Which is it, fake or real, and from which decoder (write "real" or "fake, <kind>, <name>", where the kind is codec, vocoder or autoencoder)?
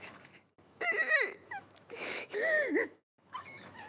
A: fake, autoencoder, DAC-VAE